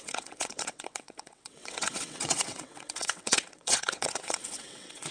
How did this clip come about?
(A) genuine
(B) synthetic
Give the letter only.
B